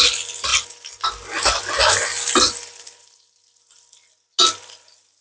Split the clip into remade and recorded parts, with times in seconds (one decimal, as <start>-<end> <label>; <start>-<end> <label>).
0.0-5.2 recorded